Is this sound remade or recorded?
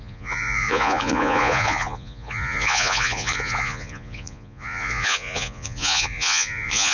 remade